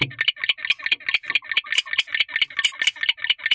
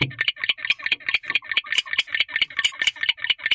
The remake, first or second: second